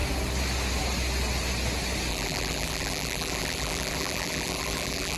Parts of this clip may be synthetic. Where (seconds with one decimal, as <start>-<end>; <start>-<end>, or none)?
2.1-5.2